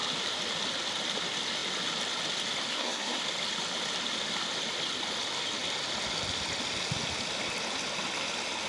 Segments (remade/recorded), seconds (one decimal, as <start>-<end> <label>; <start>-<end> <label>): 0.0-2.7 recorded; 2.7-3.2 remade; 3.2-8.7 recorded